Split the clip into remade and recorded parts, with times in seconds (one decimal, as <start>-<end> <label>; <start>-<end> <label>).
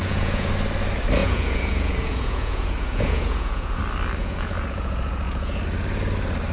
0.0-0.5 remade; 0.5-1.2 recorded; 1.2-3.8 remade; 3.8-4.2 recorded; 4.2-5.6 remade; 5.6-6.5 recorded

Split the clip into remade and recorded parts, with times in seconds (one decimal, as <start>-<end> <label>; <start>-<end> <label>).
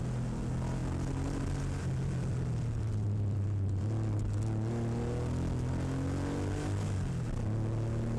0.0-8.2 recorded